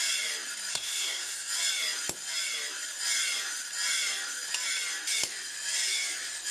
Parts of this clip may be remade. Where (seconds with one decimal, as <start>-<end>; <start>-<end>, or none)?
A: 0.7-1.5

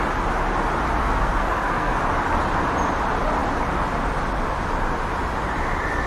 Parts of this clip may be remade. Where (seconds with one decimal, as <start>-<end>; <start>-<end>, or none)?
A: 1.0-2.0

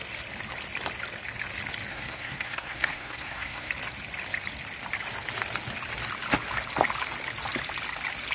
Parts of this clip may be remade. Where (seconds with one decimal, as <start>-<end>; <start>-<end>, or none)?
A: 1.9-3.7

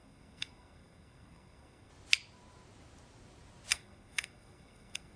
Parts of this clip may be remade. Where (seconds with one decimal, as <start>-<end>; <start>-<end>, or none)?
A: 0.0-1.9; 3.7-5.2

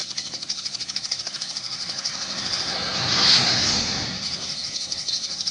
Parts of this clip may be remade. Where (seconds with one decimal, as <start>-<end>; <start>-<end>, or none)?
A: 0.0-5.5

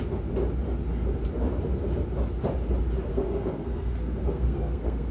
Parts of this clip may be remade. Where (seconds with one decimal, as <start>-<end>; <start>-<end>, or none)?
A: 3.1-5.1